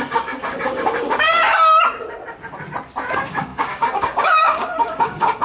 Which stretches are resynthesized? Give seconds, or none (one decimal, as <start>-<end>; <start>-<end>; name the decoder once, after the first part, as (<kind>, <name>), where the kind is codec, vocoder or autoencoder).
0.0-1.4 (codec, DAC); 3.1-5.4